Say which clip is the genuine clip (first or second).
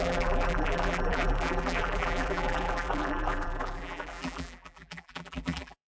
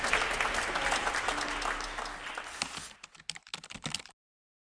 second